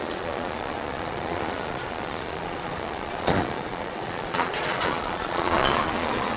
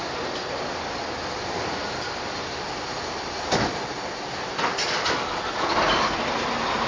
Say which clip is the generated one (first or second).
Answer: first